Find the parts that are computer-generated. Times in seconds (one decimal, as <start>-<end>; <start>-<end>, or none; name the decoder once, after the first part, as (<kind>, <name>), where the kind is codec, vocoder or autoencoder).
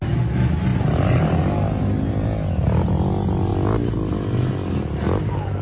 none